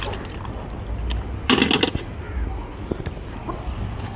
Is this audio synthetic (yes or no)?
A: no